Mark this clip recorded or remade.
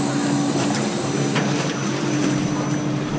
recorded